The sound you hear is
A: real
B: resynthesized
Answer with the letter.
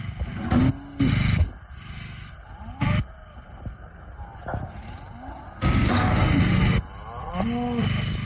A